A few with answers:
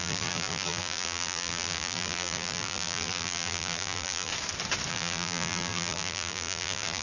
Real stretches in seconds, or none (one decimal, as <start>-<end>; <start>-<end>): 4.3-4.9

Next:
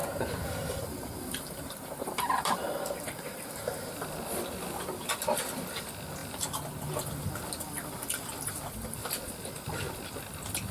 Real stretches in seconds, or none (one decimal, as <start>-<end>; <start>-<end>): 3.4-10.7

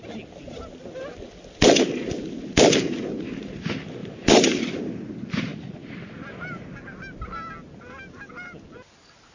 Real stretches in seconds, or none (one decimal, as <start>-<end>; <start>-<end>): 0.0-4.0; 4.8-9.3

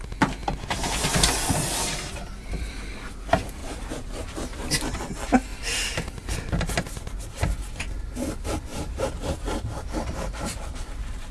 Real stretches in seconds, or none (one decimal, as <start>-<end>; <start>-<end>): 0.0-3.6; 5.0-5.5; 6.7-8.7